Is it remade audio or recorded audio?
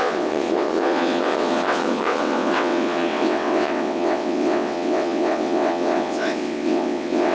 remade